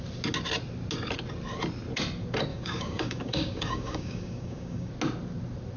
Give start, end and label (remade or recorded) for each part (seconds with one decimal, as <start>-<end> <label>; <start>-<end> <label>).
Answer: 0.0-2.5 recorded; 2.5-4.9 remade; 4.9-5.8 recorded